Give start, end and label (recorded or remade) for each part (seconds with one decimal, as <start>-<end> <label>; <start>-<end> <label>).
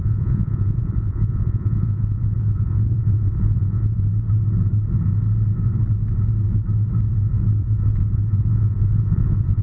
0.0-4.1 remade; 4.1-7.5 recorded; 7.5-9.6 remade